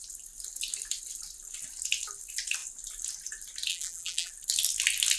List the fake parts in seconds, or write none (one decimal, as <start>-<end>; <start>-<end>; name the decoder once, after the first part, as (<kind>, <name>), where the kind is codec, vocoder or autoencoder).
3.7-4.3 (vocoder, BigVGAN v2)